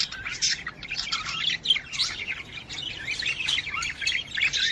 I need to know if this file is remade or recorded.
recorded